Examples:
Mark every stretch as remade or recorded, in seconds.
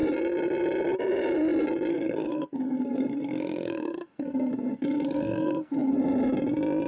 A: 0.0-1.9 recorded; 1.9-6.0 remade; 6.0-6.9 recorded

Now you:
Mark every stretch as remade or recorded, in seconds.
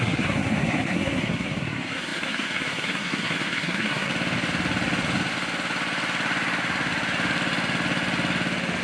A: 0.0-4.1 remade; 4.1-8.8 recorded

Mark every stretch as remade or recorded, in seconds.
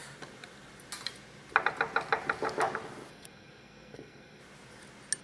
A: 0.0-3.1 recorded; 3.1-4.4 remade; 4.4-5.2 recorded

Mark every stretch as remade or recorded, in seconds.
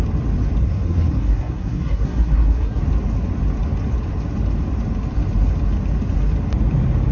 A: 0.0-0.6 recorded; 0.6-2.8 remade; 2.8-7.1 recorded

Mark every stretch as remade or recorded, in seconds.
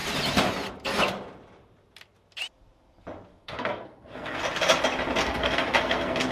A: 0.0-3.3 recorded; 3.3-4.4 remade; 4.4-5.2 recorded; 5.2-6.3 remade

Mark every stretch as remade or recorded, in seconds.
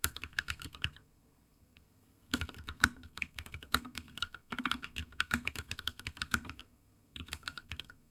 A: 0.0-8.1 remade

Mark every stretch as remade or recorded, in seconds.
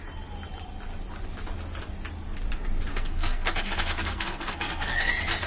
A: 0.0-2.9 recorded; 2.9-5.1 remade; 5.1-5.5 recorded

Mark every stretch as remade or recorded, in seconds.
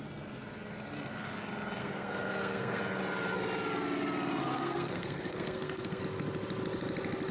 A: 0.0-1.8 recorded; 1.8-2.8 remade; 2.8-4.5 recorded; 4.5-6.0 remade; 6.0-7.3 recorded